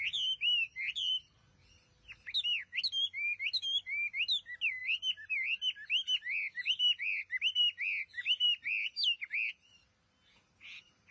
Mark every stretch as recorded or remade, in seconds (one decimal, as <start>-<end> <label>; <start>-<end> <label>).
0.0-0.7 recorded; 0.7-1.5 remade; 1.5-11.1 recorded